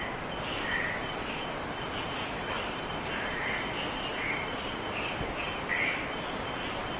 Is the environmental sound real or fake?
real